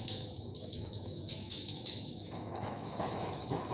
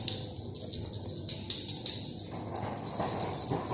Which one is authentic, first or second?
second